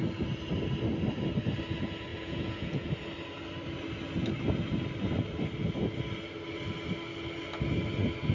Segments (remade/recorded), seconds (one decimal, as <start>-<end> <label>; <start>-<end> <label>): 0.0-2.1 recorded; 2.1-2.9 remade; 2.9-8.3 recorded